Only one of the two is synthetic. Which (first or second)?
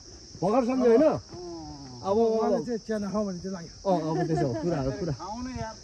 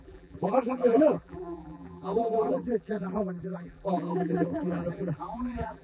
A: second